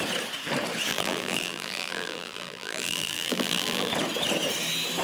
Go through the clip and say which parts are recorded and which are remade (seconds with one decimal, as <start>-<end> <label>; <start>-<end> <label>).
0.0-0.9 recorded; 0.9-3.9 remade; 3.9-5.0 recorded